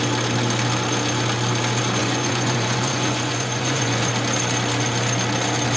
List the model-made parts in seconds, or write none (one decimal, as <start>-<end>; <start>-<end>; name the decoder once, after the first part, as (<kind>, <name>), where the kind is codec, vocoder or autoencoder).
2.0-4.1 (vocoder, Vocos)